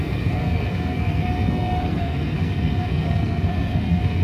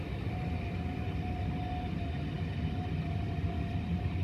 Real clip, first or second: second